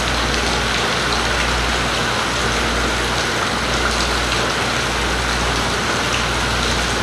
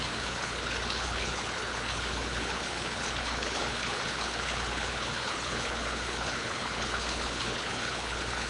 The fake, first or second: second